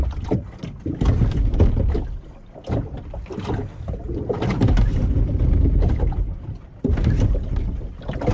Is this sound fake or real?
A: real